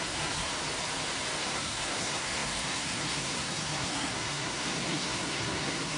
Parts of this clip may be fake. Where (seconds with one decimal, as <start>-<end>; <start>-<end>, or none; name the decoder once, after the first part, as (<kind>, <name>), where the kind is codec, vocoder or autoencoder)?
0.0-0.5 (codec, SNAC); 1.4-6.0